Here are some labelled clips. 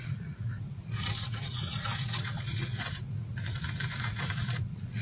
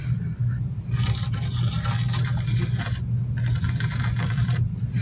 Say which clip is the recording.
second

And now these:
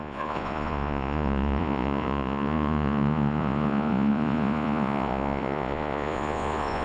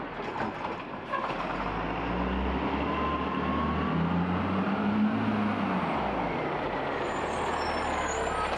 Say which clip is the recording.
second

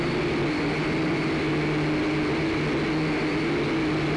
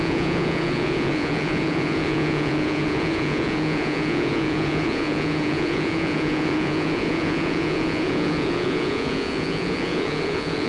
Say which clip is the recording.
first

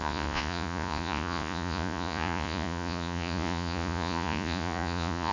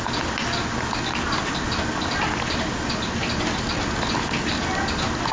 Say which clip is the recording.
second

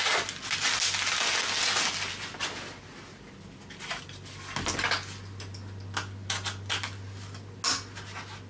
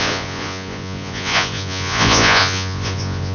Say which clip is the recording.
first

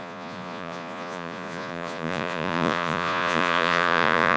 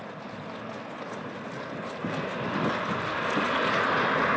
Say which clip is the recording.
second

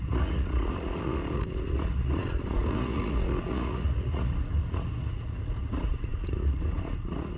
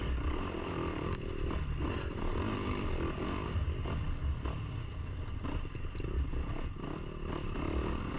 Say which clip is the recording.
second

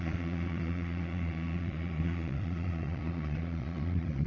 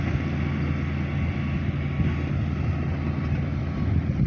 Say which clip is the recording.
second